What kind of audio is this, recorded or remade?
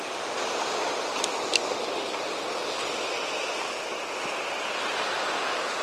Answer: recorded